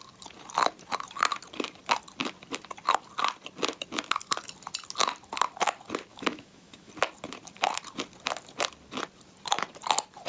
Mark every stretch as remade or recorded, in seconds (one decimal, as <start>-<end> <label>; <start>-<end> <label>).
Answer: 0.0-6.1 recorded; 6.1-6.9 remade; 6.9-10.3 recorded